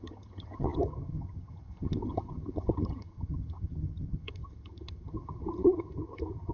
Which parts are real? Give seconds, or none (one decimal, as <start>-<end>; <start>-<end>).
none